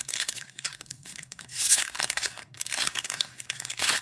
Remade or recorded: remade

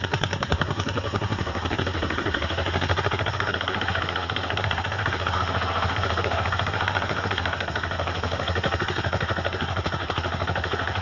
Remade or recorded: remade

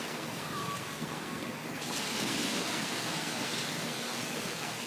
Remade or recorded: remade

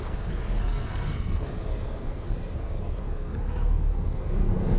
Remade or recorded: remade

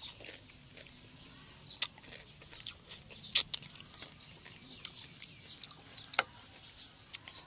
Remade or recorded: recorded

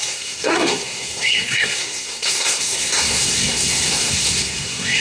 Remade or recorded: remade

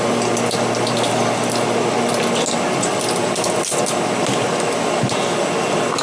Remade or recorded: recorded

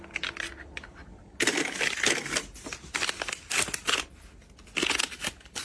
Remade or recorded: recorded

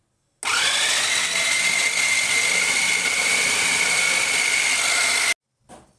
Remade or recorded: recorded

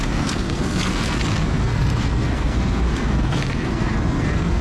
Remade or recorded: remade